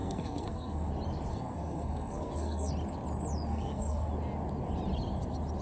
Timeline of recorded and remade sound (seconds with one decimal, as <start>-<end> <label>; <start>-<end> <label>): 0.0-0.9 remade; 0.9-1.3 recorded; 1.3-2.7 remade; 2.7-3.5 recorded; 3.5-4.1 remade; 4.1-5.6 recorded